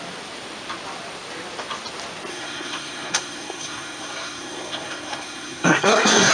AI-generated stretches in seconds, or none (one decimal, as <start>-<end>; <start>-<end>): 2.3-6.3